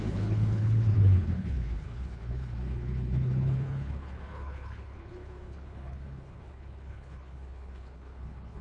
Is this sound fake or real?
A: fake